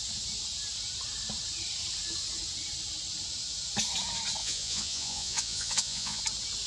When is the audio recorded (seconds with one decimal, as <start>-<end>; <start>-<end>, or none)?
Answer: 0.0-4.4; 6.2-6.7